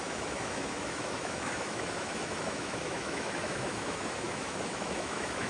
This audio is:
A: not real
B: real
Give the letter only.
A